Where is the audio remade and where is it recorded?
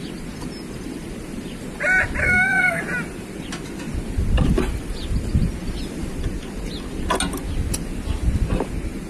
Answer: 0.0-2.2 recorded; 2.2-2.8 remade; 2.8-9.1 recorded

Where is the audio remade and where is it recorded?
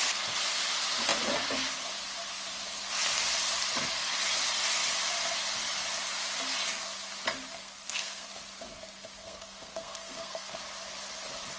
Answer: 0.0-7.6 recorded; 7.6-8.3 remade; 8.3-9.2 recorded; 9.2-10.6 remade; 10.6-11.6 recorded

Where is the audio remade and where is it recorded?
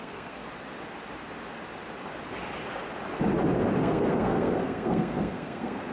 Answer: 0.0-0.4 remade; 0.4-3.8 recorded; 3.8-5.9 remade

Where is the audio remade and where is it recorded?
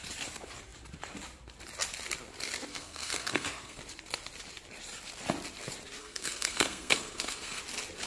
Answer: 0.0-2.7 recorded; 2.7-3.8 remade; 3.8-6.0 recorded; 6.0-7.6 remade; 7.6-8.1 recorded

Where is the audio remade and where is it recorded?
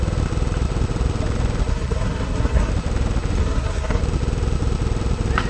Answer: 0.0-1.7 recorded; 1.7-2.7 remade; 2.7-3.4 recorded; 3.4-4.0 remade; 4.0-5.5 recorded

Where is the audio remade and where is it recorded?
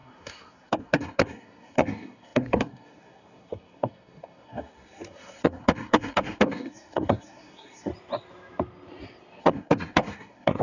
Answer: 0.0-7.9 remade; 7.9-9.4 recorded; 9.4-10.6 remade